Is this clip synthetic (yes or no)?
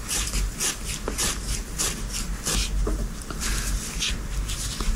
no